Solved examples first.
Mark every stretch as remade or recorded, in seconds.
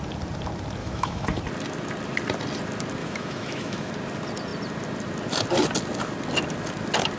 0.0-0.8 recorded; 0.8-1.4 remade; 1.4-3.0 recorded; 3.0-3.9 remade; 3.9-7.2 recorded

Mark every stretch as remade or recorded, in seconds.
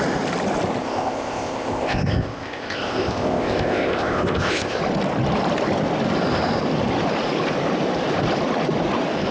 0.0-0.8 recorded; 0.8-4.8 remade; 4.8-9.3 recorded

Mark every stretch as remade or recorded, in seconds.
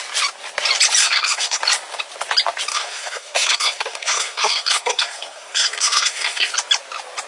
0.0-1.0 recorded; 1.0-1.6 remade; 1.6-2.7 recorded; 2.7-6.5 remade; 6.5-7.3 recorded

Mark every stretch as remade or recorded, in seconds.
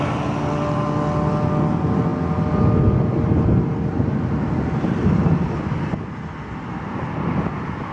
0.0-7.9 recorded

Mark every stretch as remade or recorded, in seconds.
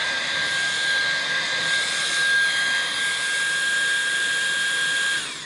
0.0-5.5 recorded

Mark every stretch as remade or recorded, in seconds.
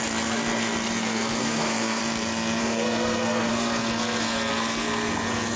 0.0-1.4 recorded; 1.4-2.0 remade; 2.0-2.6 recorded; 2.6-3.5 remade; 3.5-5.6 recorded